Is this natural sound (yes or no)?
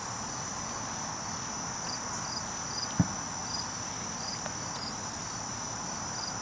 yes